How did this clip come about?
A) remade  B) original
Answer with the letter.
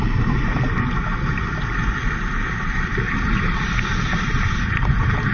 B